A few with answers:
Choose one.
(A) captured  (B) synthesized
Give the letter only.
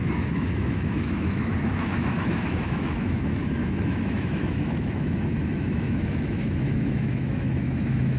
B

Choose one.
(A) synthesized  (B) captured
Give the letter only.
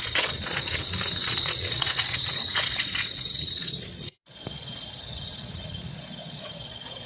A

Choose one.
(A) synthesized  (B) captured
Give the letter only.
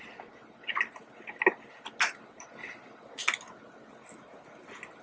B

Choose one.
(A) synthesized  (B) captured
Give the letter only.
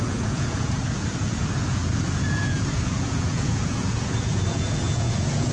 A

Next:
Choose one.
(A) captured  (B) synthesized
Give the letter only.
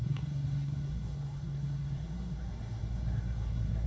B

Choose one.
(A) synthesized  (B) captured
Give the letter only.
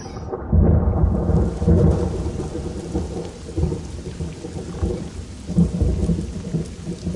A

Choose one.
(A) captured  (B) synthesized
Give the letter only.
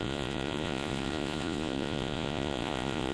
B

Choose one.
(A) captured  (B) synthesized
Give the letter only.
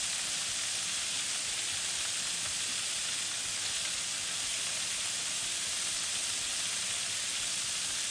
A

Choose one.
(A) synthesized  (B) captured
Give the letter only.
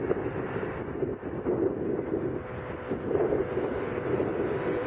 B